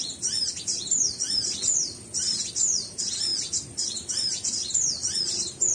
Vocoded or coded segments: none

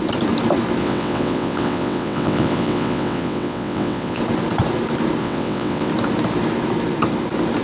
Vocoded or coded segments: 0.8-4.2 (vocoder, WaveNeXt); 5.2-5.9

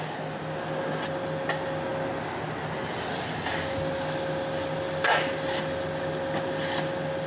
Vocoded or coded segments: none

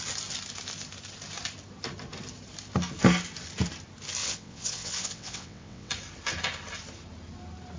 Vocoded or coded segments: 4.2-5.9 (vocoder, WaveNeXt)

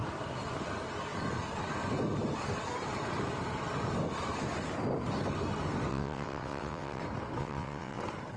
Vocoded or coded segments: 5.9-7.0 (vocoder, WaveNeXt); 7.4-8.0

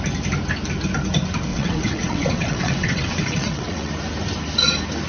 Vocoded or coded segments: 1.5-3.9 (vocoder, WaveNeXt)

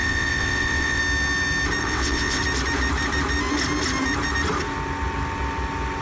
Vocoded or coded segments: 0.0-1.0 (vocoder, WaveNeXt); 1.8-2.4